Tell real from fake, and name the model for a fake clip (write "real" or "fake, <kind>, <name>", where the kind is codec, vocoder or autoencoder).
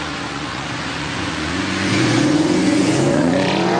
fake, vocoder, Vocos